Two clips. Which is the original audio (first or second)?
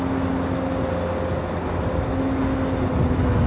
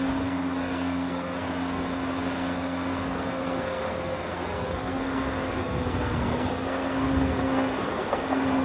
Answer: first